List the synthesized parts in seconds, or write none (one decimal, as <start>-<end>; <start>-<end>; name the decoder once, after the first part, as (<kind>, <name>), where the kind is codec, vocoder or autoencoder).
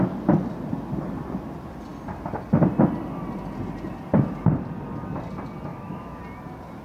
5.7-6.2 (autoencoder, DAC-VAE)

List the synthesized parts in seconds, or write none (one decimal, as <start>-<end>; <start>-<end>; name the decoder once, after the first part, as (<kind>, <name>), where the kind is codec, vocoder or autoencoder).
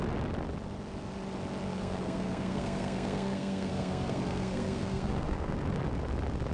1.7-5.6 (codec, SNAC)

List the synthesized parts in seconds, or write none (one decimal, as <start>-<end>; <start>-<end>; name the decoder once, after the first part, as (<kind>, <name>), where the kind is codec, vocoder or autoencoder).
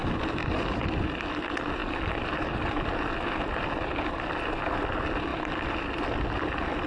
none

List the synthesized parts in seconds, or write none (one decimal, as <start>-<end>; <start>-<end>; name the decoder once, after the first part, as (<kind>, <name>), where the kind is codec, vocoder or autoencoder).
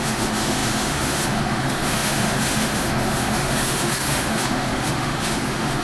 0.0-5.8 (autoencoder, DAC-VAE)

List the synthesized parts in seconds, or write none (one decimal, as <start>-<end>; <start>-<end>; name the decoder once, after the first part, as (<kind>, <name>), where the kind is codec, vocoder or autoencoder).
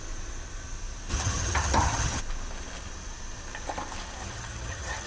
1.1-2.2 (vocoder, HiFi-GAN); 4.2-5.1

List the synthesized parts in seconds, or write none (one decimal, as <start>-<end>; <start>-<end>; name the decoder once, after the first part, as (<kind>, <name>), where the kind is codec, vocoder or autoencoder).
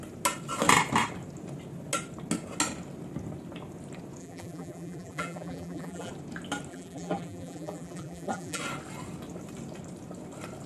4.2-6.1 (vocoder, BigVGAN v2); 6.7-8.6